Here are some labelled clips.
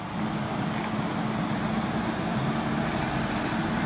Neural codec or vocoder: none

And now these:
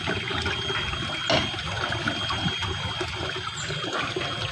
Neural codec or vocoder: none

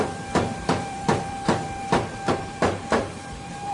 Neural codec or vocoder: vocoder, BigVGAN v2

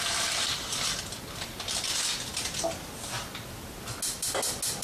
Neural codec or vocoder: none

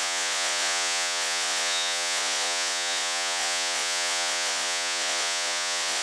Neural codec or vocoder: vocoder, Vocos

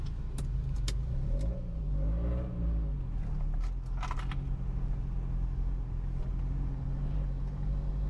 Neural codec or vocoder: none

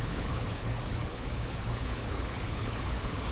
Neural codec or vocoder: codec, HILCodec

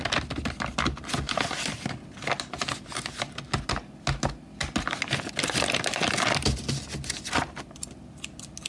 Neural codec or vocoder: none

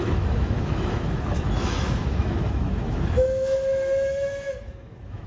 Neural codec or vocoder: autoencoder, DAC-VAE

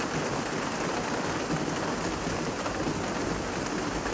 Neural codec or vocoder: none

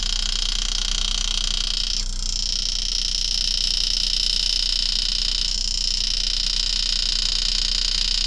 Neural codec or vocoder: none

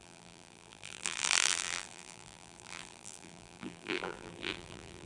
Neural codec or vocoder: vocoder, BigVGAN v2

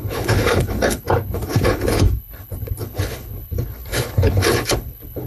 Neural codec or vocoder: codec, HILCodec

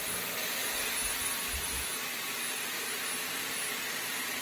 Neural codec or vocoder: none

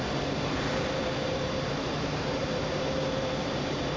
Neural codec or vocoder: vocoder, BigVGAN v2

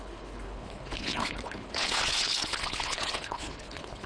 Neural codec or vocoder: codec, HILCodec